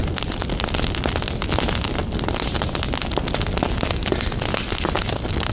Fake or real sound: real